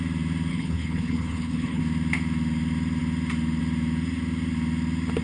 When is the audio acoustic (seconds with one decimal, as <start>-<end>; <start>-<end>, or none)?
0.0-0.5; 1.8-5.2